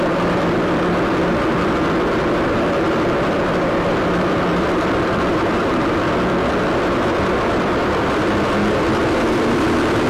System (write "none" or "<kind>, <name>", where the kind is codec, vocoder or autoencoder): vocoder, BigVGAN v2